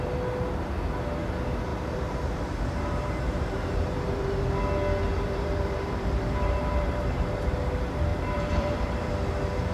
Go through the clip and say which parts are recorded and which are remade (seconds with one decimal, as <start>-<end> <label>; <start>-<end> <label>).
0.0-1.7 recorded; 1.7-4.4 remade; 4.4-5.1 recorded; 5.1-7.6 remade; 7.6-8.1 recorded; 8.1-9.1 remade; 9.1-9.7 recorded